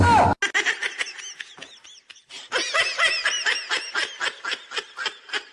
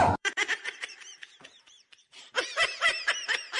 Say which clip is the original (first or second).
first